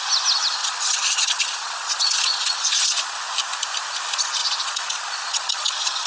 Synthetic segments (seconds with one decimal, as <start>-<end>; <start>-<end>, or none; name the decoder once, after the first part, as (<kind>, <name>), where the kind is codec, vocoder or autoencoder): 0.6-3.2 (vocoder, Vocos); 4.4-6.1